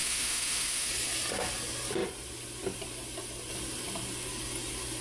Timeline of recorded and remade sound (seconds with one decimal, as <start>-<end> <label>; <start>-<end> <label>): 0.0-0.9 remade; 0.9-5.0 recorded